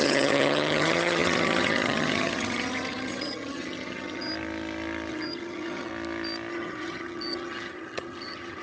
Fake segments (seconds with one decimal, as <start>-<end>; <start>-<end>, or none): 0.0-4.3; 5.1-5.9; 6.5-8.6